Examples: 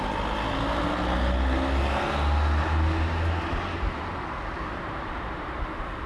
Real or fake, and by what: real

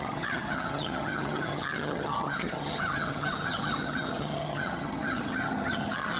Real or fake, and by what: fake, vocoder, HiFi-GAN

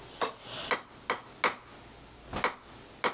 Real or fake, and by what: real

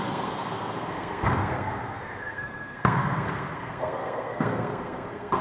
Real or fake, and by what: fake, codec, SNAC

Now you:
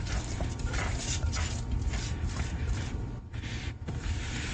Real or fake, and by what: real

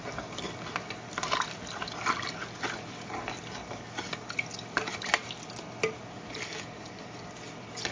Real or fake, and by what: real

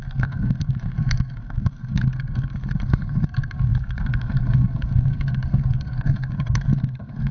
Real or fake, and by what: fake, codec, SNAC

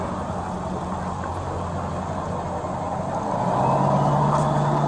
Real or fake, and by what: real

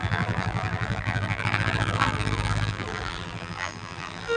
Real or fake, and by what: fake, vocoder, BigVGAN v2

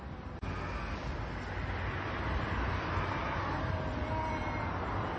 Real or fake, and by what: real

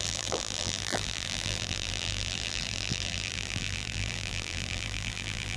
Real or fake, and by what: fake, vocoder, BigVGAN v2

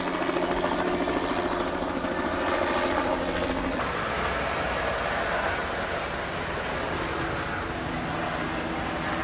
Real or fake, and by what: real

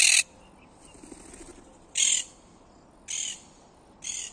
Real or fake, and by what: real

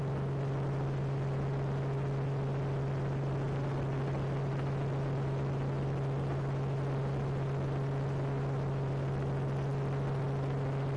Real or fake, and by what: real